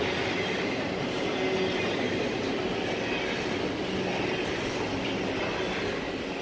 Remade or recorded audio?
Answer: recorded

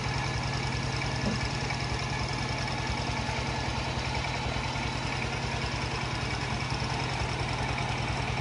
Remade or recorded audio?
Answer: recorded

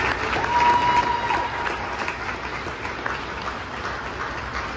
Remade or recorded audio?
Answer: recorded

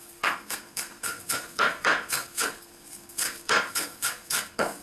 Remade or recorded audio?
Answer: remade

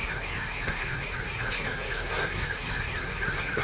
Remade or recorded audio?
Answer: remade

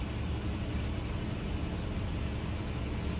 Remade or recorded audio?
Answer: recorded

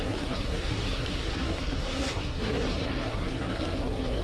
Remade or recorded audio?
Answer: remade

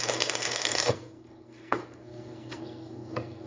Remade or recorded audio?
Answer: remade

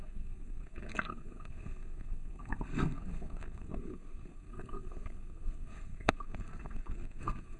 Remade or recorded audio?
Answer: remade